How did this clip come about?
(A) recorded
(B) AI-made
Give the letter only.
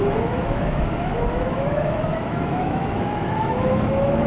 B